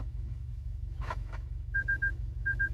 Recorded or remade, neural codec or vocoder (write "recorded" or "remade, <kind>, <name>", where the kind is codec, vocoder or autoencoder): remade, autoencoder, DAC-VAE